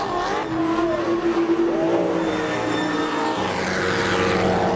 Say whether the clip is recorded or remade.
recorded